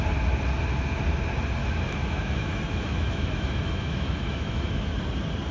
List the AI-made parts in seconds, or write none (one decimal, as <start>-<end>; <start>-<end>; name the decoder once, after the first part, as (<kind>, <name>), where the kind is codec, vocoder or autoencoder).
1.6-4.9 (autoencoder, DAC-VAE)